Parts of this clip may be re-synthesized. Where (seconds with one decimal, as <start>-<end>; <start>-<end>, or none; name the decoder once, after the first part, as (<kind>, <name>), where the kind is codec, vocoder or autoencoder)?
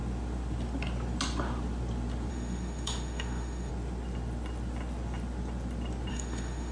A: 2.3-3.7 (autoencoder, DAC-VAE); 6.1-6.7